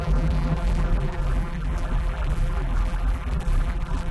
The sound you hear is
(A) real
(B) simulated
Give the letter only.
B